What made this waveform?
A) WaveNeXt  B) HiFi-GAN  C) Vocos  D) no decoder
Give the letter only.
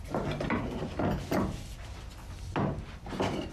D